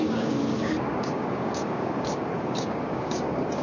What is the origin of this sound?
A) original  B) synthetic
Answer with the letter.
B